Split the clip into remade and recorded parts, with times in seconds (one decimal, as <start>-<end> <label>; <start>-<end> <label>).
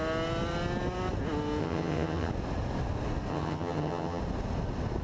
0.0-1.6 recorded; 1.6-2.3 remade; 2.3-3.3 recorded; 3.3-4.2 remade; 4.2-5.0 recorded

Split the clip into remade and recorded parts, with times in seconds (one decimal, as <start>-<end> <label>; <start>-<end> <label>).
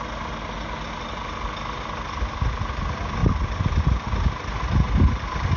0.0-5.6 recorded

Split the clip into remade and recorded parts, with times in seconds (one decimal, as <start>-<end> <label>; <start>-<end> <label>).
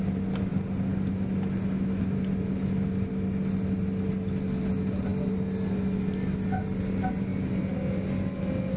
0.0-8.8 recorded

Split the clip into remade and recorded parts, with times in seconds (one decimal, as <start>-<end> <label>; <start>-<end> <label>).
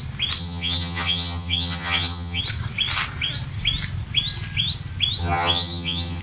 0.0-0.4 recorded; 0.4-2.4 remade; 2.4-5.2 recorded; 5.2-6.2 remade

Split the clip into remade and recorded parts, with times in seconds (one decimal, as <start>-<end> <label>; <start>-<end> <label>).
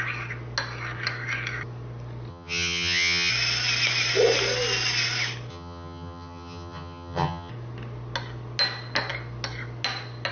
0.0-2.3 recorded; 2.3-3.3 remade; 3.3-5.5 recorded; 5.5-7.5 remade; 7.5-10.3 recorded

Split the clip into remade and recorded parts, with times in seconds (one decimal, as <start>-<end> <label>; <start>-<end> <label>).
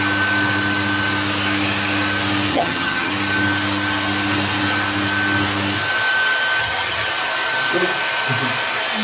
0.0-2.5 recorded; 2.5-3.1 remade; 3.1-6.6 recorded; 6.6-7.1 remade; 7.1-9.0 recorded